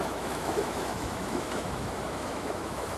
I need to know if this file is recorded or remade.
remade